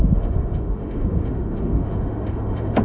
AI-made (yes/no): yes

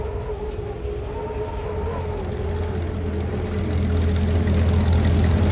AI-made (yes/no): no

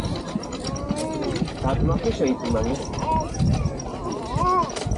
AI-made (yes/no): no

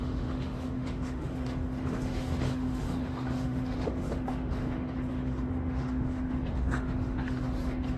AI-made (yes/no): yes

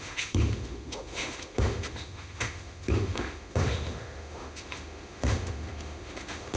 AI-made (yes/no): yes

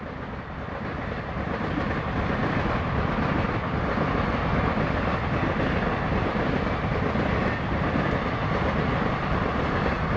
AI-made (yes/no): no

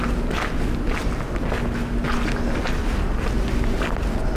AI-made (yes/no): no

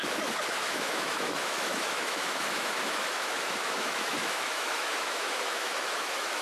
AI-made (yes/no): yes